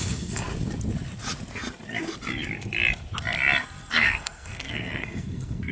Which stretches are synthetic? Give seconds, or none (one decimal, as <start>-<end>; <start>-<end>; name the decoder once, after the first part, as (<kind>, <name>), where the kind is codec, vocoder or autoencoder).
0.0-0.5 (codec, SNAC); 3.9-5.7